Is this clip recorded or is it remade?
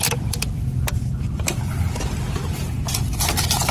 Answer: remade